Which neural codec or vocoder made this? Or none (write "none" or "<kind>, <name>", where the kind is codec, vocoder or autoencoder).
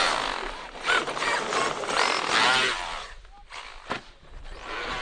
none